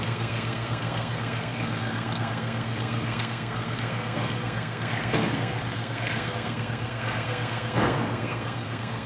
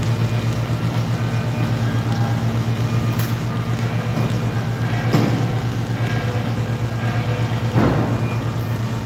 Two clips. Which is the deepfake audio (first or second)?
first